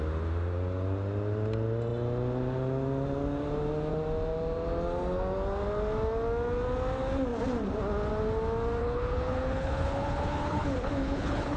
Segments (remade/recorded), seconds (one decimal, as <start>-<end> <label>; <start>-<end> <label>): 0.0-8.8 recorded; 8.8-11.6 remade